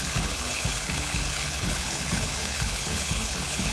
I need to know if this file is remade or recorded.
remade